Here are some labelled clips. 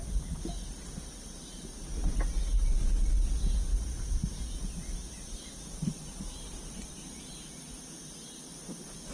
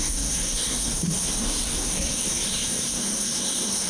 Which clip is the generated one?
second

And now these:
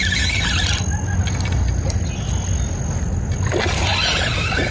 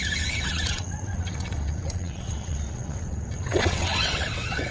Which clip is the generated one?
second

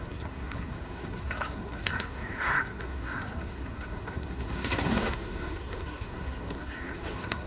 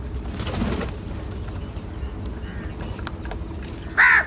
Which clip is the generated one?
first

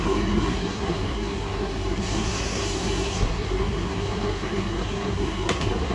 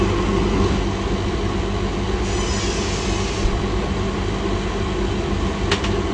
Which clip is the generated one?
first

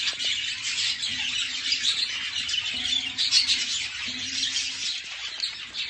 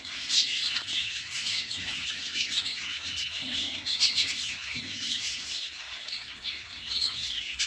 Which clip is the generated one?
second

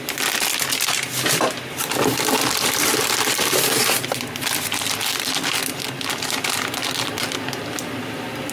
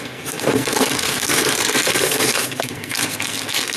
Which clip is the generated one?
second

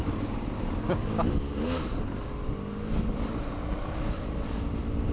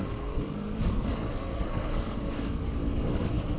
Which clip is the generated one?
second